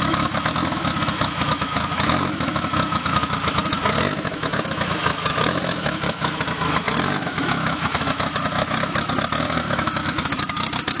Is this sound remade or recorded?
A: remade